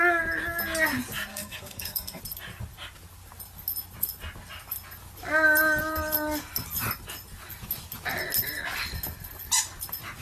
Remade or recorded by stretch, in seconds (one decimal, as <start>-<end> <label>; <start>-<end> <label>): 0.0-1.3 recorded; 1.3-2.2 remade; 2.2-10.2 recorded